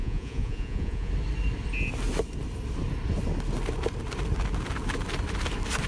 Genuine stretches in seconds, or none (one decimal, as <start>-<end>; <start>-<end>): 1.1-5.9